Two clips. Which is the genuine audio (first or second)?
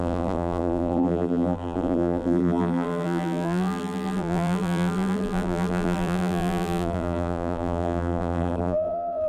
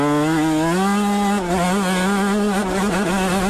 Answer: second